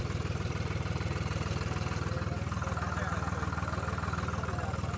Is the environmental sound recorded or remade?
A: recorded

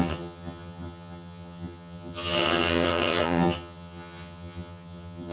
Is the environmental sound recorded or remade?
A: remade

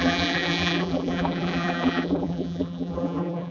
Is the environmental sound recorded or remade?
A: remade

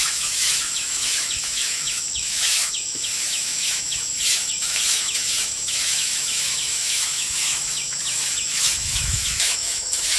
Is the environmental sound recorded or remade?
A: remade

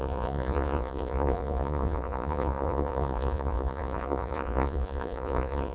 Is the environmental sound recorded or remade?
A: remade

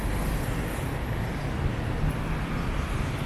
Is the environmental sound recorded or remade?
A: recorded